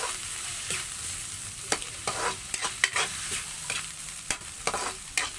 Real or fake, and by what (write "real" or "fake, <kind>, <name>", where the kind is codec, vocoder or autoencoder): fake, vocoder, BigVGAN v2